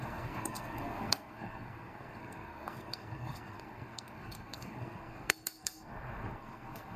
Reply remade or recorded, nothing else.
remade